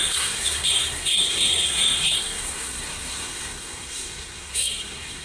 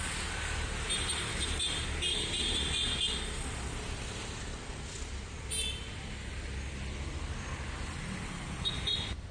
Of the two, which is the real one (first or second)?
second